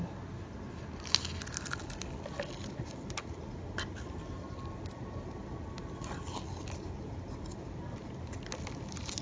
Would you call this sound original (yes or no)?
yes